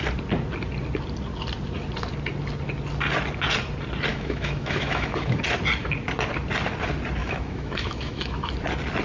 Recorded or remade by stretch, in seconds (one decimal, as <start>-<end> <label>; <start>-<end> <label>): 0.0-4.1 recorded; 4.1-5.4 remade; 5.4-7.2 recorded; 7.2-8.5 remade; 8.5-9.0 recorded